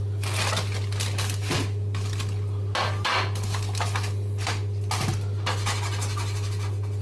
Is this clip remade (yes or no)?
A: no